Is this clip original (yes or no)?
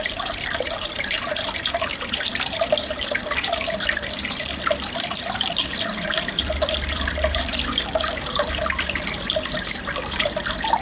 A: no